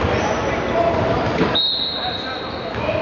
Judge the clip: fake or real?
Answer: real